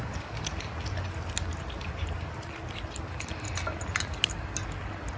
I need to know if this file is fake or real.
real